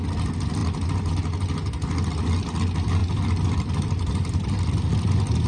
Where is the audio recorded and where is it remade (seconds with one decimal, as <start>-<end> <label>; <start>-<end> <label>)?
0.0-3.0 recorded; 3.0-4.9 remade; 4.9-5.5 recorded